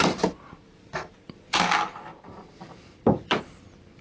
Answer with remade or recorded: remade